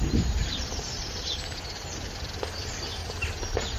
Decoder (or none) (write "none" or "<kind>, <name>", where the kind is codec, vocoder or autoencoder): vocoder, BigVGAN v2